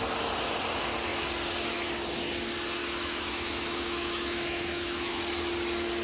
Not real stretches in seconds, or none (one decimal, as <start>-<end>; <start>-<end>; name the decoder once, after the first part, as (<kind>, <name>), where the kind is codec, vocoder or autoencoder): 2.8-5.2 (autoencoder, DAC-VAE)